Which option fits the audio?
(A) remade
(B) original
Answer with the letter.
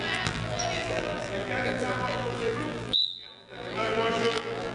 A